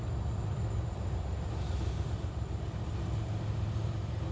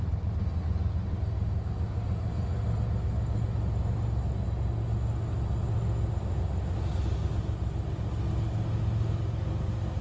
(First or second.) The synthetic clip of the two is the first